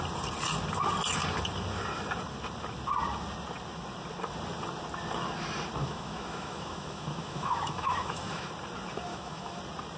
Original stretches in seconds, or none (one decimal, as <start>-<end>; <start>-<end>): 0.0-5.8; 8.5-9.1; 9.6-10.0